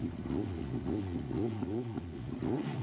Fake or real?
fake